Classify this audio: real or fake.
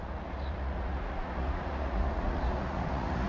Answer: fake